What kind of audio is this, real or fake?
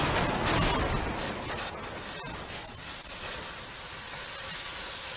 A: real